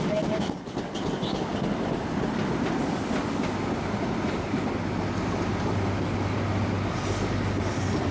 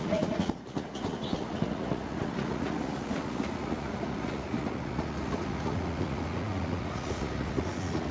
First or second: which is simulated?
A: second